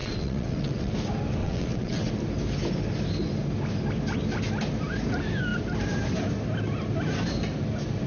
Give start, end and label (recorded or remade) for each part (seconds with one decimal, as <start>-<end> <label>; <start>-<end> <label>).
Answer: 0.0-0.9 remade; 0.9-1.4 recorded; 1.4-2.1 remade; 2.1-8.1 recorded